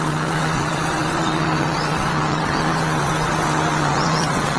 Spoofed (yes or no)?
yes